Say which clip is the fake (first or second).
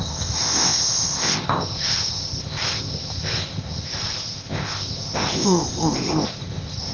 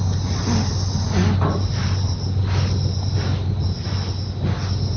first